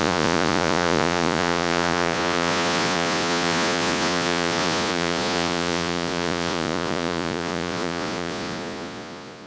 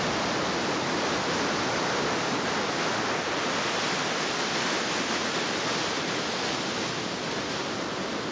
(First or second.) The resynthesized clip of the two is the first